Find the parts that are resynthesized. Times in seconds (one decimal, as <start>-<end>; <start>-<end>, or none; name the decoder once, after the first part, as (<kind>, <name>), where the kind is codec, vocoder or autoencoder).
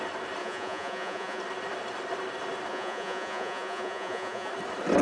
0.4-1.4 (vocoder, Vocos); 2.7-4.5